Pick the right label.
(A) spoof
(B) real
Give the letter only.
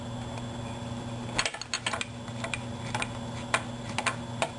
B